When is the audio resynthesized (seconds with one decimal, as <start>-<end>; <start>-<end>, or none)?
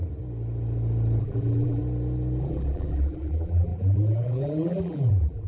1.2-1.8; 2.4-5.5